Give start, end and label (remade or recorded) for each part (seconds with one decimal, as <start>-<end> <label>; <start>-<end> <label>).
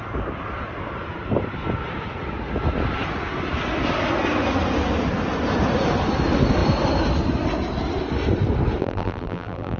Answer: 0.0-8.8 recorded; 8.8-9.8 remade